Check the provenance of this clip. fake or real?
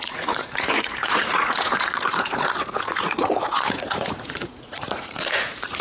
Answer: fake